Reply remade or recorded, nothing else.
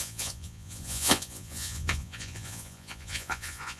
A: remade